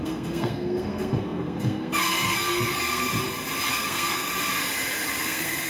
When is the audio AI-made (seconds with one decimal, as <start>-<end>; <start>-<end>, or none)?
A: 0.0-3.1; 3.7-4.3; 5.2-5.7